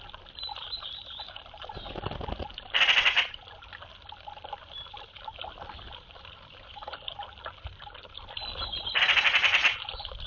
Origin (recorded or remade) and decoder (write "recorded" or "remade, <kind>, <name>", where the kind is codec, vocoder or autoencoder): recorded